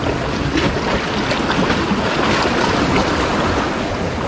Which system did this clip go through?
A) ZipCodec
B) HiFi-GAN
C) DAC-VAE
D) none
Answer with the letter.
D